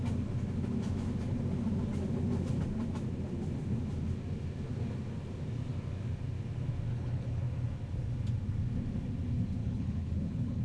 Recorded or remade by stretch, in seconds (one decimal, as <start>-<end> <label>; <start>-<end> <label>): 0.0-6.9 recorded; 6.9-7.4 remade; 7.4-9.6 recorded; 9.6-10.6 remade

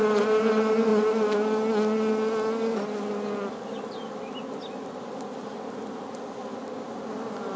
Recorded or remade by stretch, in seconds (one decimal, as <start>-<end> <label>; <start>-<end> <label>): 0.0-7.6 recorded